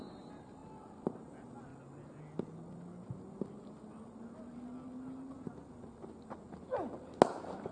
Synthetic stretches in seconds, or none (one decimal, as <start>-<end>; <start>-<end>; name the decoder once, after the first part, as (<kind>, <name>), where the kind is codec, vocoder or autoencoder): none

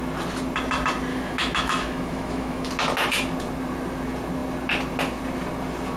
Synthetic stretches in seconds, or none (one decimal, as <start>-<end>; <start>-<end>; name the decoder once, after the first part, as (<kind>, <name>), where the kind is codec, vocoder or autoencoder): 1.1-2.7 (autoencoder, DAC-VAE)

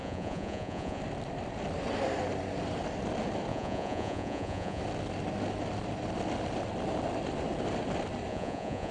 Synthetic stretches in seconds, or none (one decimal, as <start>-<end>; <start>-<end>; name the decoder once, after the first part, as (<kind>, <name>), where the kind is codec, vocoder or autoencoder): 0.0-1.0 (vocoder, Vocos); 3.5-4.8; 8.3-8.9

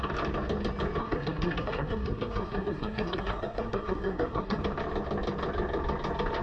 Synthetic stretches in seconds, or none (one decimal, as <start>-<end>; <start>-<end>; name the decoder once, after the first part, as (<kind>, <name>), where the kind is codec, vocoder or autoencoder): 1.0-4.6 (codec, SNAC)

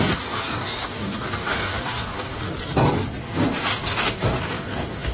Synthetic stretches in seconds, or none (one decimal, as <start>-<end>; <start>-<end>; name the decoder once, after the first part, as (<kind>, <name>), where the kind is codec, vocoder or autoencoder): 0.0-2.4 (codec, DAC); 3.2-5.1

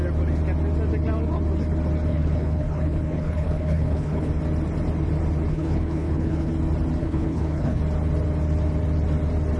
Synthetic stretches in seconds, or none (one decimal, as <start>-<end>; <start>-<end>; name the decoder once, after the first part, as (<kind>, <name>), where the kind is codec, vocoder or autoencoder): 2.1-4.3 (codec, HILCodec); 5.5-6.5; 7.0-7.8

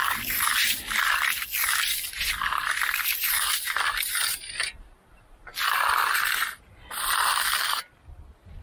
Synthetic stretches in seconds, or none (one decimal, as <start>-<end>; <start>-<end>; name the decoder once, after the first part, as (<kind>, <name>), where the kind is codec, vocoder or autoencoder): none